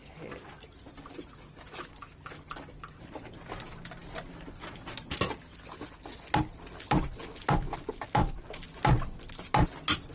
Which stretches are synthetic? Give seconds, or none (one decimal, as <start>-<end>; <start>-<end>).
none